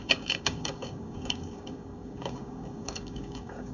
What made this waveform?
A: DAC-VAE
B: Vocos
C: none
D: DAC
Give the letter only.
D